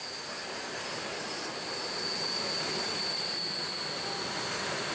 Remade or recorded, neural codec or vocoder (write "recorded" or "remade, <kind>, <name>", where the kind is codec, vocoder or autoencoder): recorded